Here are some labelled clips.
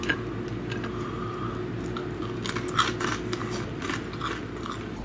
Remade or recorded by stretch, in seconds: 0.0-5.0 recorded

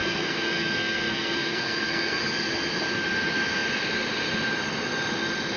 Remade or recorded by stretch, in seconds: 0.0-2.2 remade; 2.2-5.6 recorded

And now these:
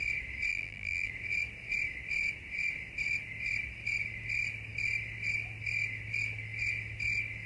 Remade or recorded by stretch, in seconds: 0.0-0.5 recorded; 0.5-1.1 remade; 1.1-7.5 recorded

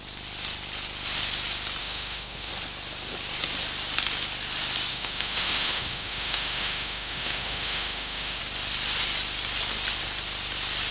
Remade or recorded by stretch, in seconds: 0.0-1.8 recorded; 1.8-2.5 remade; 2.5-4.9 recorded; 4.9-8.4 remade; 8.4-10.9 recorded

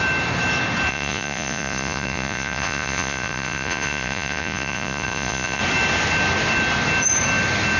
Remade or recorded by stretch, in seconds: 0.0-0.9 recorded; 0.9-5.6 remade; 5.6-7.8 recorded

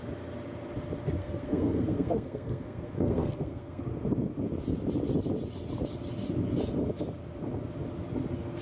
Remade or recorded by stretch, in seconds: 0.0-1.2 recorded; 1.2-3.8 remade; 3.8-8.6 recorded

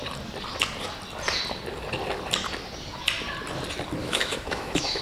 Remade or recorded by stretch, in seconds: 0.0-4.0 recorded; 4.0-5.0 remade